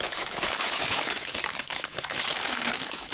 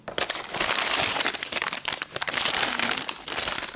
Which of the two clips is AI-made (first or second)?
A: first